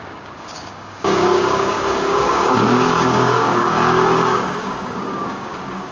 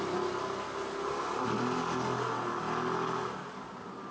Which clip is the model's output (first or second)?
first